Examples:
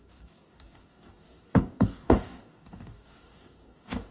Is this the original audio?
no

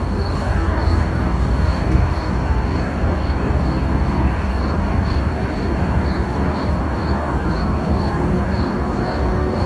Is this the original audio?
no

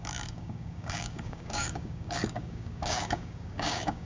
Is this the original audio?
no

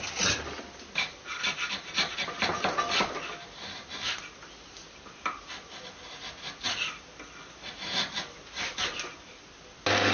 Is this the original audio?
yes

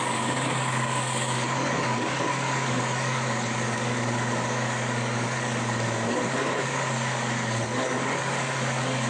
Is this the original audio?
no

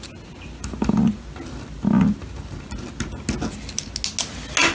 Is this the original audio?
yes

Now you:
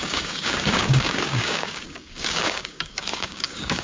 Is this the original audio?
no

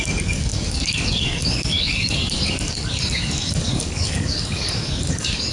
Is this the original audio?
no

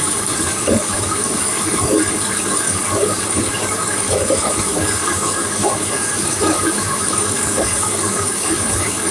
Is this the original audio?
no